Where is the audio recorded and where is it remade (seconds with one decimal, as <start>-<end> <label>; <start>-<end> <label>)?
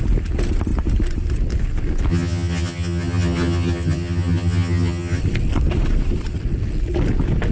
0.0-2.1 recorded; 2.1-5.2 remade; 5.2-7.5 recorded